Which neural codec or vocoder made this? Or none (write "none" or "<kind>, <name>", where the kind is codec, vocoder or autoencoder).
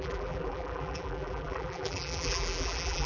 vocoder, BigVGAN v2